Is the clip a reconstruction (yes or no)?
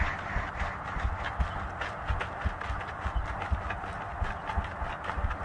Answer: no